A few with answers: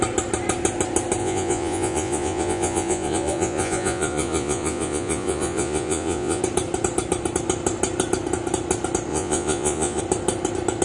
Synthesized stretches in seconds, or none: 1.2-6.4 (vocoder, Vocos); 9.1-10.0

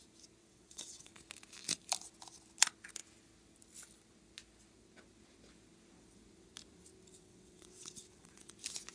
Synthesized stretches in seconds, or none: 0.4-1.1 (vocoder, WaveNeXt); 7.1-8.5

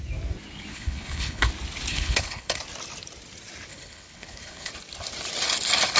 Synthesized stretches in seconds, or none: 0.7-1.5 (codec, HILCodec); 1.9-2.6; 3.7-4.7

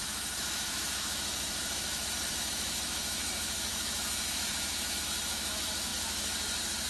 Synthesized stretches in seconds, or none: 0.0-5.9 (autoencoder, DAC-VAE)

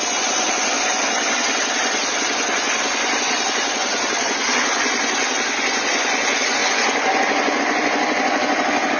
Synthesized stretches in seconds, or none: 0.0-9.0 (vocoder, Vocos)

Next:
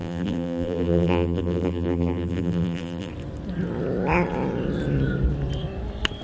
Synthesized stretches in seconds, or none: 0.0-3.1 (vocoder, BigVGAN v2)

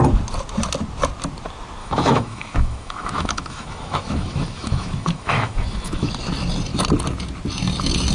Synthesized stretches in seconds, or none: 1.8-6.1 (autoencoder, DAC-VAE)